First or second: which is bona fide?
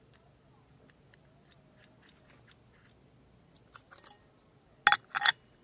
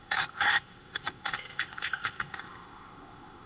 first